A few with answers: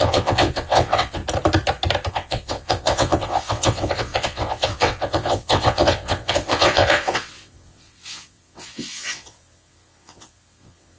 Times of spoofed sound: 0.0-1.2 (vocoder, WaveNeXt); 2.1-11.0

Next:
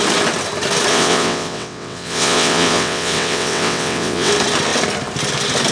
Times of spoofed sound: 0.9-4.3 (vocoder, WaveNeXt)